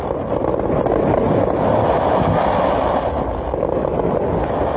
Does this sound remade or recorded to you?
recorded